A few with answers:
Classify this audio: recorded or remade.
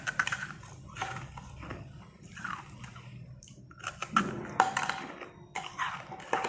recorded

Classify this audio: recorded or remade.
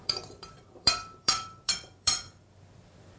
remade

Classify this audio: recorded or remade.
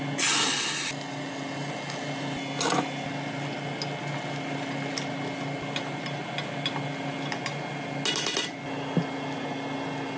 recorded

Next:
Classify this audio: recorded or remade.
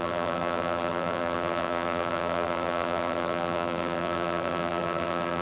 remade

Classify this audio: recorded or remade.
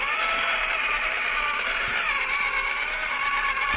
remade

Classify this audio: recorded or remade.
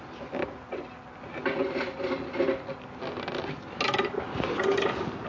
recorded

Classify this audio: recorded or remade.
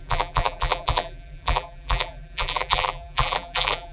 remade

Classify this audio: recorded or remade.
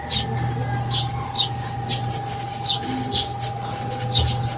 recorded